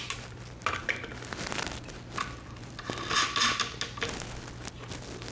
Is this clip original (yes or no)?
yes